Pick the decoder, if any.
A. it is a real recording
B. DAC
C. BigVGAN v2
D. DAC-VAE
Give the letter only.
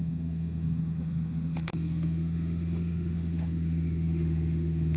D